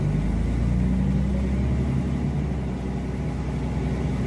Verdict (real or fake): real